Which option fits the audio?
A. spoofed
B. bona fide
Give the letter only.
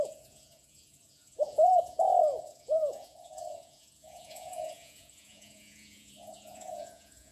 A